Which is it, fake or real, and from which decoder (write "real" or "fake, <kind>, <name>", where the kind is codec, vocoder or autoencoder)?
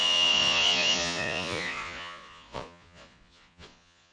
fake, vocoder, Vocos